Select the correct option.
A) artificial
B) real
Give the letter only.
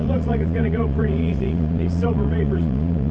A